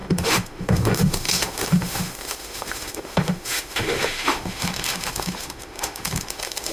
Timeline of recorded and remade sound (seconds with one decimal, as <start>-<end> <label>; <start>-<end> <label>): 0.0-6.7 remade